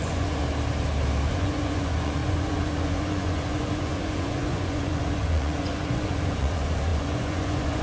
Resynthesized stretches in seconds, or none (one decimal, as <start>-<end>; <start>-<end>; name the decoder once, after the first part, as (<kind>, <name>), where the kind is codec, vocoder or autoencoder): 0.0-0.4 (vocoder, Vocos); 1.3-7.8